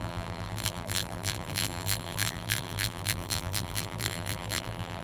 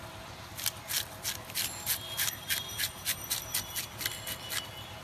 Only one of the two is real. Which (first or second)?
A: second